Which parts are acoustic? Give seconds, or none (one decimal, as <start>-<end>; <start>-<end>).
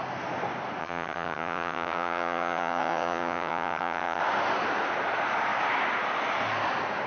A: 0.0-0.8; 4.2-7.1